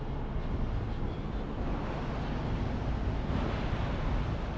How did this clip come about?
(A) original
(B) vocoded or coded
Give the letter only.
A